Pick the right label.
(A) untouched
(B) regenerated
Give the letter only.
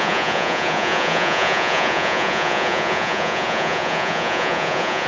B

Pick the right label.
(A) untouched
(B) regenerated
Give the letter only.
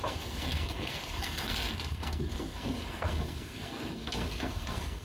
B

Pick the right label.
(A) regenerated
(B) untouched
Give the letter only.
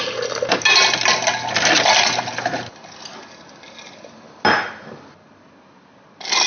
B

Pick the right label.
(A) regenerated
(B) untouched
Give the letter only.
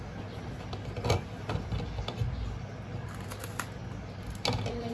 B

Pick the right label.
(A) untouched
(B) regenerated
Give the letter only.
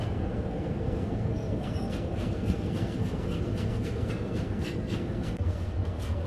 B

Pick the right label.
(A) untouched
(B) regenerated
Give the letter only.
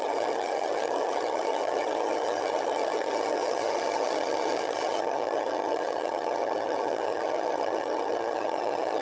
B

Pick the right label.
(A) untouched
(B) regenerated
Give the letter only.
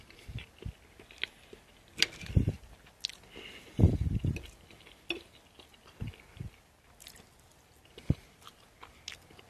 A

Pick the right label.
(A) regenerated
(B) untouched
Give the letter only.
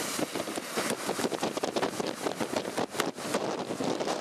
B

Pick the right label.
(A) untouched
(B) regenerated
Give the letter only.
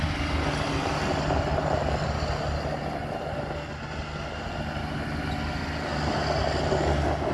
A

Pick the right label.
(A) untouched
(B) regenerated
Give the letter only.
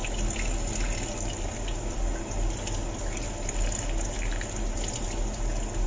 A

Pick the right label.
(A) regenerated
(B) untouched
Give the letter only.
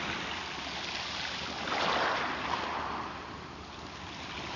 B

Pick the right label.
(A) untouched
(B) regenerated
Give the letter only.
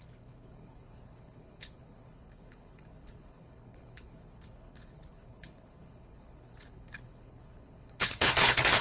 B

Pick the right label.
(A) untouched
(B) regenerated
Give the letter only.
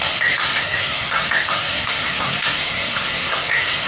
B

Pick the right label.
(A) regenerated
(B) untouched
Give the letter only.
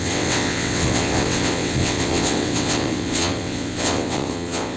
A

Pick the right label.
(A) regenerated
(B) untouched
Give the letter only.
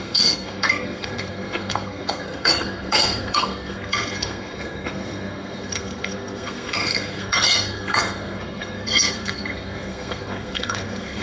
A